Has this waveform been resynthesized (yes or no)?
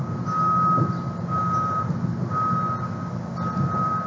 no